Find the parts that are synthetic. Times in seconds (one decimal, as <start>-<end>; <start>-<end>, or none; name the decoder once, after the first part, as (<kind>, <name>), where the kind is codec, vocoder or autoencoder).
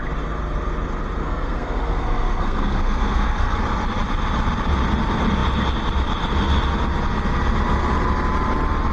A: 1.2-3.6 (codec, SNAC)